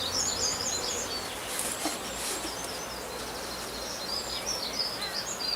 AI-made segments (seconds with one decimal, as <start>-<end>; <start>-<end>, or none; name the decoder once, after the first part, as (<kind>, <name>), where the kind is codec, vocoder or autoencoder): none